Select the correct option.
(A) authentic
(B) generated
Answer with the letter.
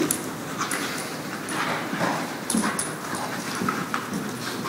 A